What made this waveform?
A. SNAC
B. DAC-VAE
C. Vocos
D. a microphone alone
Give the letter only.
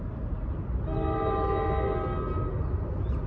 D